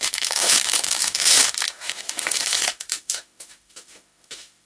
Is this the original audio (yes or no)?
no